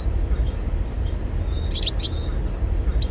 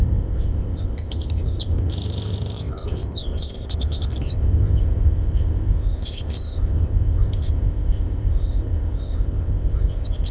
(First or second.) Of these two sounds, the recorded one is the first